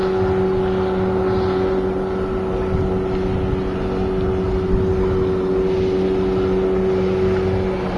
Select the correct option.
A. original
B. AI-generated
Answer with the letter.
A